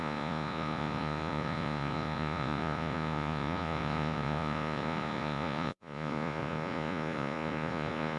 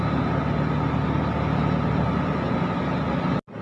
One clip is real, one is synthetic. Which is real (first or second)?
second